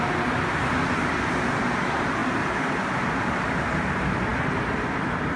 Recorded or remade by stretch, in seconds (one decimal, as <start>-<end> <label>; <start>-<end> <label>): 0.0-5.4 recorded